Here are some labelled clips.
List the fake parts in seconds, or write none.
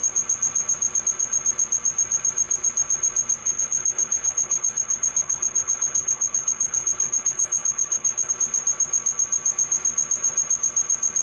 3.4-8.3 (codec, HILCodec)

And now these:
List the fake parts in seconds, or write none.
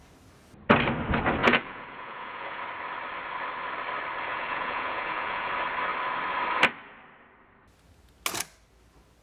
1.4-2.6 (vocoder, Vocos); 4.3-5.5